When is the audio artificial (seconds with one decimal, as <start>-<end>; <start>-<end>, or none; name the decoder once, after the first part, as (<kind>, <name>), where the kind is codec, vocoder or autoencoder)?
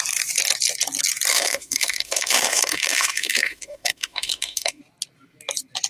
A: 1.3-4.8 (autoencoder, DAC-VAE)